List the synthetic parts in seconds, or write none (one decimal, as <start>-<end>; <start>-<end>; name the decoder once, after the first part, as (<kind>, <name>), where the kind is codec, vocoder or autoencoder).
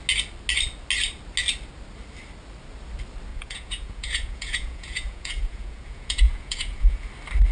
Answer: 3.3-7.1 (vocoder, Vocos)